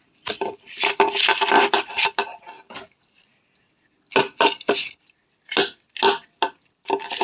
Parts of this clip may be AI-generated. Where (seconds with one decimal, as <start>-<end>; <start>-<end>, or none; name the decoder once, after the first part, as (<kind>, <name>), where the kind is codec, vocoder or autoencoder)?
none